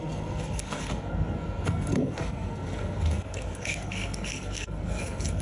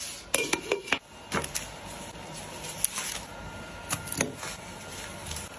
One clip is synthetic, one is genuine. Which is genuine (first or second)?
second